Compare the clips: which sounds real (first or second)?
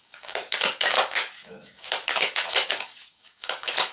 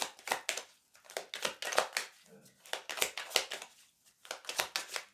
second